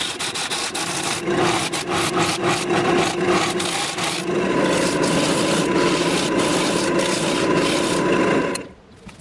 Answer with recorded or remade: recorded